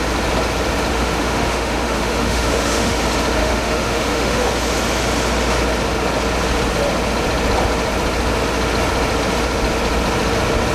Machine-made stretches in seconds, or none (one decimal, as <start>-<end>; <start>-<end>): 0.9-3.0; 3.4-4.5